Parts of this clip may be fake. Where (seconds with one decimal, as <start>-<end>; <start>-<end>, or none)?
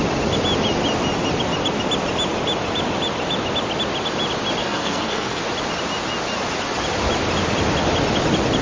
4.6-5.4